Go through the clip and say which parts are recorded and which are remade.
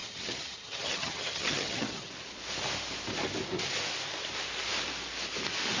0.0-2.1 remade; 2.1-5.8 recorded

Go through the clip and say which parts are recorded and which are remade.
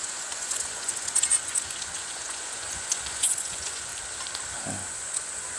0.0-3.9 remade; 3.9-4.9 recorded; 4.9-5.6 remade